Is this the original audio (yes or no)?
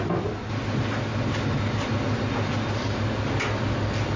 yes